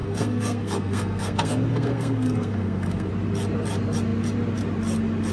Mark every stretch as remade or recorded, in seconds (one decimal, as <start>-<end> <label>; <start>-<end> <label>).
0.0-3.1 remade; 3.1-5.3 recorded